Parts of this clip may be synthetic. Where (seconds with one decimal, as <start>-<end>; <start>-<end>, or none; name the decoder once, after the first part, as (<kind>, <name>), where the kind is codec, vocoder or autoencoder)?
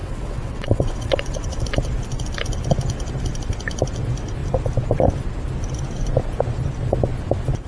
0.0-1.6 (vocoder, WaveNeXt)